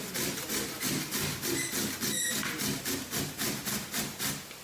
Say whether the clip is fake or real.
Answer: real